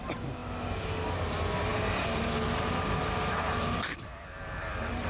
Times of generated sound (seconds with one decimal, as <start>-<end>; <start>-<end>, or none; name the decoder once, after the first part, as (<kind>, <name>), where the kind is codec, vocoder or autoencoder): 0.0-0.4 (vocoder, BigVGAN v2); 1.2-1.7; 2.8-5.1